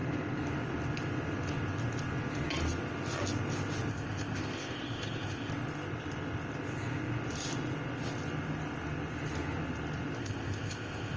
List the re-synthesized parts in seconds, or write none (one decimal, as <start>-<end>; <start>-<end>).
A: 3.9-5.5; 10.2-11.2